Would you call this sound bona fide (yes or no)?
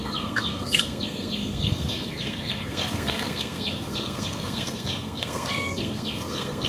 no